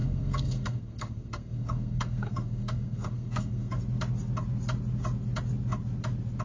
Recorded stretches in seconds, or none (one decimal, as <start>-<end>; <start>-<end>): 3.8-6.4